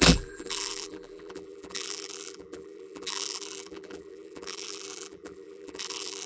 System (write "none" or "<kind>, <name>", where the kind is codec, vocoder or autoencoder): vocoder, BigVGAN v2